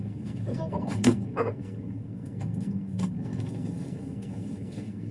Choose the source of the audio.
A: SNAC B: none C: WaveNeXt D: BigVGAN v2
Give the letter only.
A